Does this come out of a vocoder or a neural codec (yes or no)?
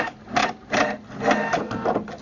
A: no